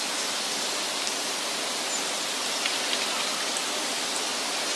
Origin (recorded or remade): recorded